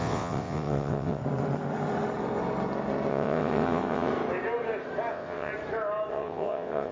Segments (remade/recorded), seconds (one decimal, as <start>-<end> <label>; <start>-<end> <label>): 0.0-1.2 remade; 1.2-3.1 recorded; 3.1-4.1 remade; 4.1-5.1 recorded; 5.1-5.5 remade; 5.5-6.1 recorded; 6.1-6.9 remade

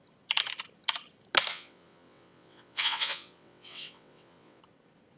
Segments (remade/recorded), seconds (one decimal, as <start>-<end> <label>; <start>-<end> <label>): 0.0-1.5 recorded; 1.5-4.6 remade; 4.6-5.2 recorded